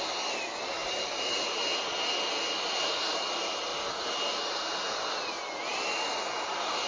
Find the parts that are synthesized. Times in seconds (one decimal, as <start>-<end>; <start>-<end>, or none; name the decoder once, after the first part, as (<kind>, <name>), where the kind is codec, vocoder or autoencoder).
none